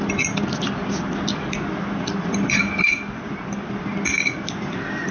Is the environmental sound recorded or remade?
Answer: recorded